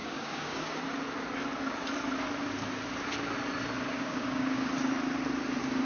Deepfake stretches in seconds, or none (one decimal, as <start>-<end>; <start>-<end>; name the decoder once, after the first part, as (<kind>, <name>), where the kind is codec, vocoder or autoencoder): 0.0-0.8 (codec, DAC); 3.9-4.7